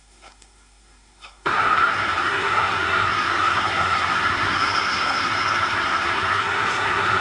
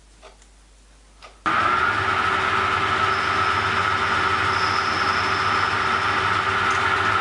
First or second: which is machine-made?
first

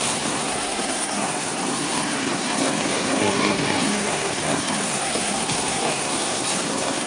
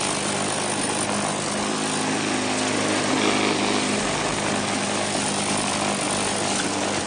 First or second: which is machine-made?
first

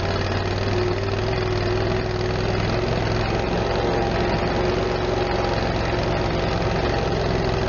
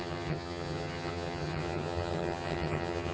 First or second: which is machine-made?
second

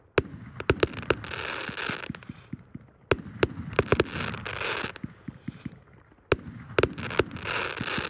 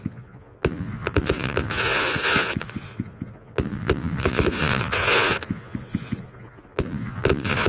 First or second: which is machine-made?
second